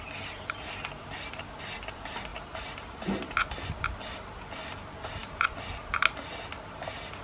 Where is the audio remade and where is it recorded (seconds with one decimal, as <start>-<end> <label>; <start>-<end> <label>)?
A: 0.0-7.2 recorded